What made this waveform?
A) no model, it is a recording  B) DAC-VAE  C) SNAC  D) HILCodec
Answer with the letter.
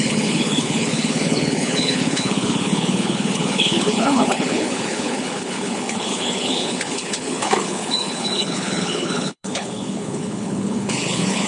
D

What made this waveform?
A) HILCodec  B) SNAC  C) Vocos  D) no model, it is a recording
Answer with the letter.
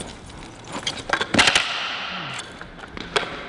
D